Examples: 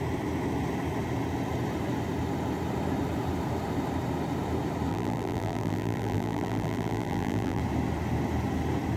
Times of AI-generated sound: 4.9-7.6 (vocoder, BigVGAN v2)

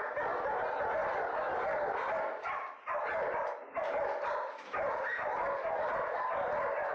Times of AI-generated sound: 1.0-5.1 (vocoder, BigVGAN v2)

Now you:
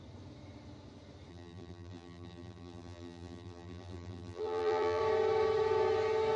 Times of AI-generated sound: 1.3-5.0 (vocoder, BigVGAN v2)

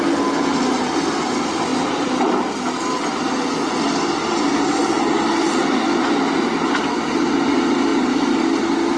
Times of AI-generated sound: 7.9-8.6 (vocoder, BigVGAN v2)